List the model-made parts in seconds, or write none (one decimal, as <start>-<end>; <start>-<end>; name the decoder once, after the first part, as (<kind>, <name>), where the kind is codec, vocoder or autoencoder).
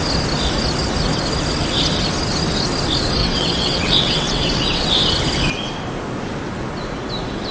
3.2-4.9 (vocoder, WaveNeXt)